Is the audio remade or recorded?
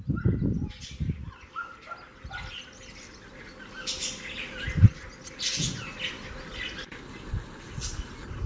recorded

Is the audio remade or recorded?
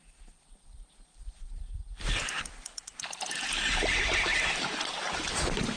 remade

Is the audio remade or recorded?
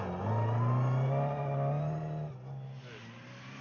recorded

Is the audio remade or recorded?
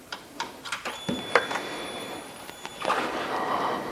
remade